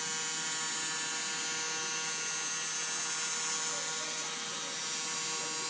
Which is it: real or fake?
real